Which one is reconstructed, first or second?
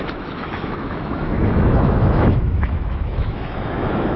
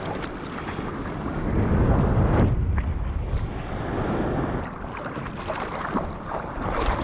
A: first